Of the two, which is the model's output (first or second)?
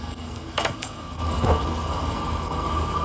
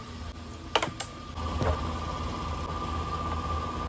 first